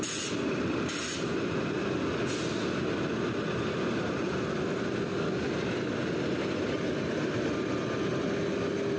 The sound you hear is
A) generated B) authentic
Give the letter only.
B